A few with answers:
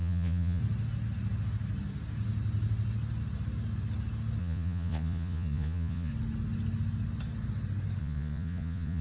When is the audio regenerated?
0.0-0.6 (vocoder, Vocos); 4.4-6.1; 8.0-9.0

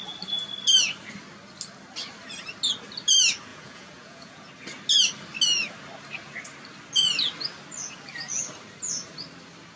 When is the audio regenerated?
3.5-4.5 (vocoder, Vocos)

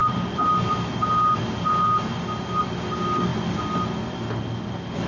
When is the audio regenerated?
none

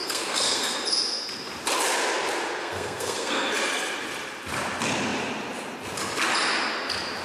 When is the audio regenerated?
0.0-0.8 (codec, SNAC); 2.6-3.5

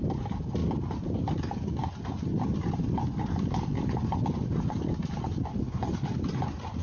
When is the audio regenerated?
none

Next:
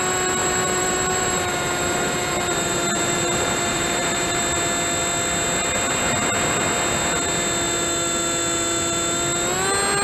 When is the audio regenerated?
0.4-4.4 (vocoder, BigVGAN v2)

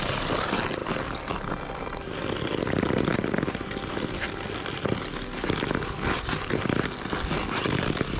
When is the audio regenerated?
none

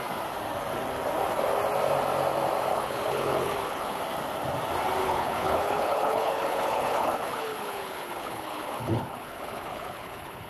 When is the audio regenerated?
2.7-4.0 (codec, HILCodec); 5.0-10.5